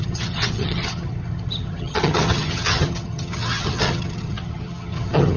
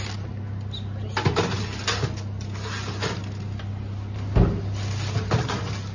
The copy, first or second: first